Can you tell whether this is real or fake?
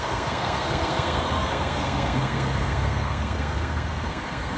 fake